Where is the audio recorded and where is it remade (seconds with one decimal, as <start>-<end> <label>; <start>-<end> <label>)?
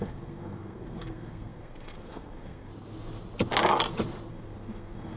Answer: 0.0-2.7 remade; 2.7-4.3 recorded; 4.3-5.2 remade